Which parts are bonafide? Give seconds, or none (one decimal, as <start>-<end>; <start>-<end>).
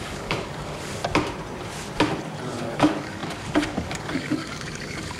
1.0-2.6